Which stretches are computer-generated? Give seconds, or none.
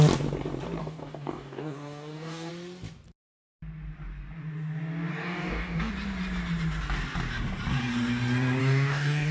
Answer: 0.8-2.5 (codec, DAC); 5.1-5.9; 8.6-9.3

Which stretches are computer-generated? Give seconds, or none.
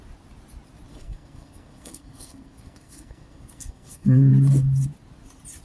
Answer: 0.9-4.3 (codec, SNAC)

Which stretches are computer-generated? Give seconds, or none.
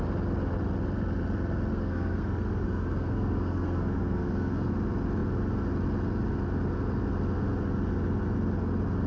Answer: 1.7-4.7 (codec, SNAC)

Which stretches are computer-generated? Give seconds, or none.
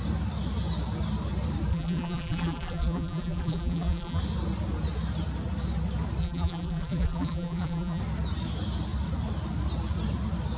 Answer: 1.7-4.2 (vocoder, BigVGAN v2); 6.2-8.0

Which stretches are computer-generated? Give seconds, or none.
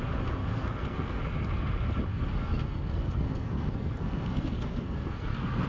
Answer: 0.4-1.2 (codec, SNAC); 2.1-5.7